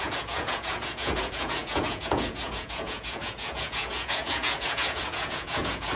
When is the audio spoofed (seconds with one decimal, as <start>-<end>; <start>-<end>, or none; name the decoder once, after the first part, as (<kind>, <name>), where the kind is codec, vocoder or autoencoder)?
0.0-6.0 (vocoder, Vocos)